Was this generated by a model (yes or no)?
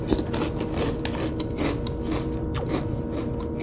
no